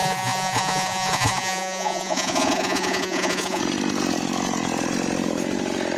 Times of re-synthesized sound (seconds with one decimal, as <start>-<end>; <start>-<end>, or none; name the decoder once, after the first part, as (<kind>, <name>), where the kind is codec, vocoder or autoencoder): 0.0-3.6 (vocoder, Vocos)